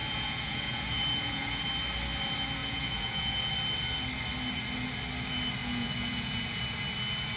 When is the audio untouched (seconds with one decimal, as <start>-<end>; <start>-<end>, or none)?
1.6-2.6; 3.5-5.6; 6.6-7.4